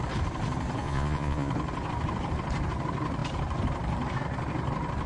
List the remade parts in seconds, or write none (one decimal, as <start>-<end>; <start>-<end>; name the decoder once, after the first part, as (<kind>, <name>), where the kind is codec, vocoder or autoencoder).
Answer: 0.8-1.5 (vocoder, Vocos)

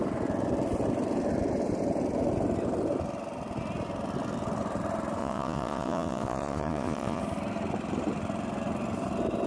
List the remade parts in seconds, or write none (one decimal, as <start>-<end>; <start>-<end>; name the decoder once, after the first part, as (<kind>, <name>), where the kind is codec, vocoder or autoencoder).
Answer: 5.2-7.2 (vocoder, Vocos)

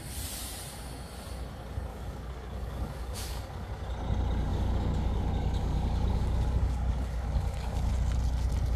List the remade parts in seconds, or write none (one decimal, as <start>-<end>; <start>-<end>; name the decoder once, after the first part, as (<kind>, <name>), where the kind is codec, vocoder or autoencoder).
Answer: 1.9-3.7 (codec, DAC); 4.5-7.9

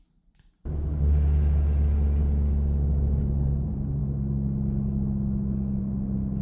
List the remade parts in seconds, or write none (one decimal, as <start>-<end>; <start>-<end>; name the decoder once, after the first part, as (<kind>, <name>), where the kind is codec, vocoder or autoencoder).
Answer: none

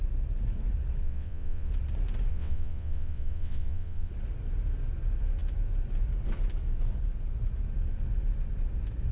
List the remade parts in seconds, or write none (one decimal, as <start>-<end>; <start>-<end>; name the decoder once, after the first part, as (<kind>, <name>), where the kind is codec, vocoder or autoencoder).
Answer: 1.0-1.7 (vocoder, WaveNeXt); 2.3-4.1

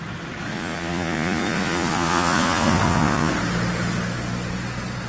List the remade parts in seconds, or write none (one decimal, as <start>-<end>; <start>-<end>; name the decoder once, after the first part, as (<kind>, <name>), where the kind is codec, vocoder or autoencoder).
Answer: 0.5-3.3 (vocoder, Vocos)